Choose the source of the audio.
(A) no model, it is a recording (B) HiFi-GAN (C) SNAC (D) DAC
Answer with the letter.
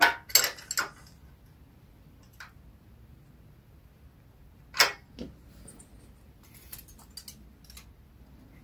A